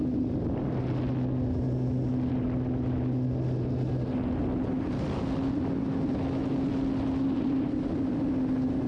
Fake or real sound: real